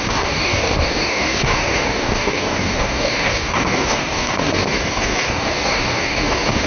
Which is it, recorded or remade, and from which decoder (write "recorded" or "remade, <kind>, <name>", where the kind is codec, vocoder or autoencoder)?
remade, codec, DAC